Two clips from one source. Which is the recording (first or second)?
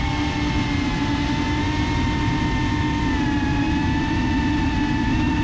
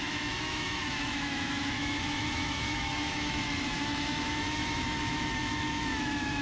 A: first